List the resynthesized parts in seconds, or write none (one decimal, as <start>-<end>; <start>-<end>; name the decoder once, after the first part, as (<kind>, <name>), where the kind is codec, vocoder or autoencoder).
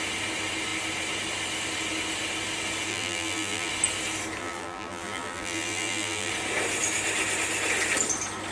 2.9-3.7 (vocoder, BigVGAN v2); 4.4-6.3